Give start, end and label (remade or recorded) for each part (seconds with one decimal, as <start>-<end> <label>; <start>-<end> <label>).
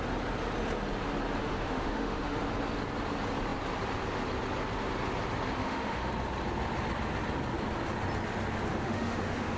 0.0-1.4 recorded; 1.4-2.4 remade; 2.4-5.6 recorded; 5.6-6.1 remade; 6.1-8.7 recorded; 8.7-9.6 remade